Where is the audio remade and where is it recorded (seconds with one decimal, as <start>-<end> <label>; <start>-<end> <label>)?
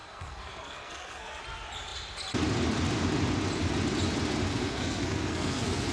0.0-1.4 remade; 1.4-4.4 recorded; 4.4-5.9 remade